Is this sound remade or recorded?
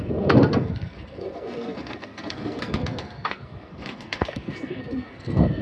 remade